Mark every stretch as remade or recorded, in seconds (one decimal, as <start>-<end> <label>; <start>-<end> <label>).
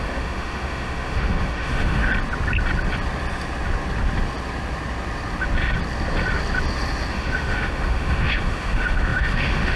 0.0-2.1 remade; 2.1-7.1 recorded; 7.1-9.8 remade